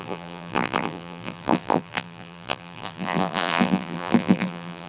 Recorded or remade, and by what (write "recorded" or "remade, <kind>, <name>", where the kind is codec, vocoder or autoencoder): remade, vocoder, BigVGAN v2